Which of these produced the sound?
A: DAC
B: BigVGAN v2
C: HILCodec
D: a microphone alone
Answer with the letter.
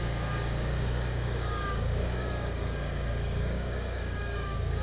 A